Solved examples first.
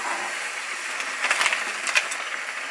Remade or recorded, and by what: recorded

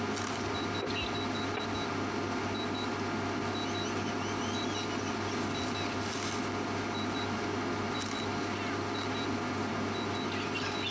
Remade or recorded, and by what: recorded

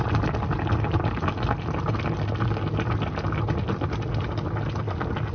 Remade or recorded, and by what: recorded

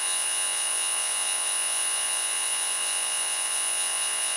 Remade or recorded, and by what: remade, vocoder, Vocos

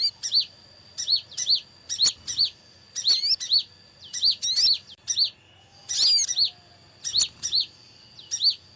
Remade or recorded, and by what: recorded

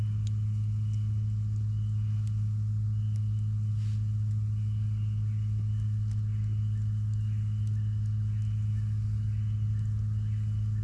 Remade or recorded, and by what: recorded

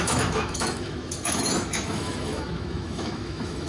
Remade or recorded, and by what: remade, autoencoder, DAC-VAE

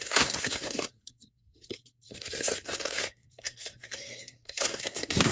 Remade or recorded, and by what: remade, codec, SNAC